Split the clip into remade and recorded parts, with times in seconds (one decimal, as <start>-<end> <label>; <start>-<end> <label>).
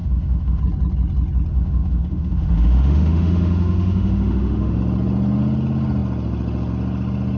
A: 0.0-0.6 remade; 0.6-1.5 recorded; 1.5-4.8 remade; 4.8-7.4 recorded